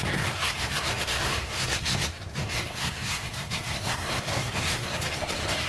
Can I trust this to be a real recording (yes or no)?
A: no